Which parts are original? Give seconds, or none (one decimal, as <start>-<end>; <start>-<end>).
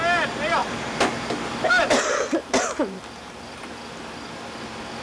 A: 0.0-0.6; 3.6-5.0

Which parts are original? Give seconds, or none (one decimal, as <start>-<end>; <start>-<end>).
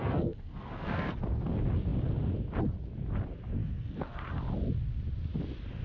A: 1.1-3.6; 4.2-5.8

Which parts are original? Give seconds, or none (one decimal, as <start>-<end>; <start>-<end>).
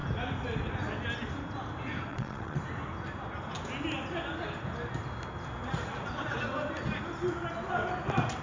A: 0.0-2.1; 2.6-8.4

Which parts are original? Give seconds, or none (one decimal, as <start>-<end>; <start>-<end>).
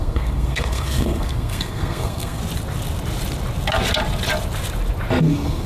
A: 2.4-5.2